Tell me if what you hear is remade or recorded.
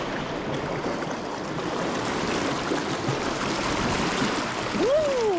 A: recorded